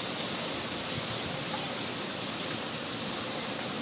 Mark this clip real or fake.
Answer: fake